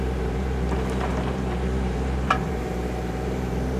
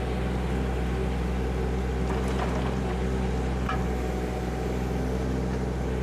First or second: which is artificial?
first